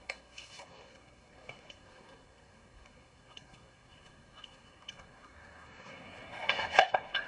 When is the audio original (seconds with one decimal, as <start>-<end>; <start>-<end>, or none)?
none